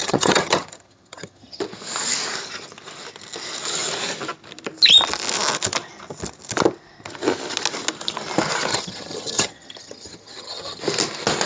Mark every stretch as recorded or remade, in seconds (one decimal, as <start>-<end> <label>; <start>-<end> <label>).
0.0-1.6 remade; 1.6-8.7 recorded; 8.7-10.8 remade; 10.8-11.5 recorded